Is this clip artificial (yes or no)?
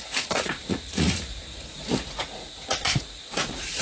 yes